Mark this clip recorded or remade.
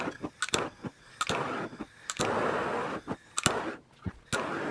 recorded